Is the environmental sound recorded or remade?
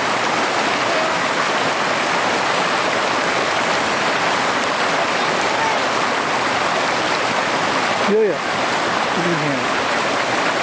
recorded